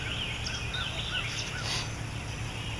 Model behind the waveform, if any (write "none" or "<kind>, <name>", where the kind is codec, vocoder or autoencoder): none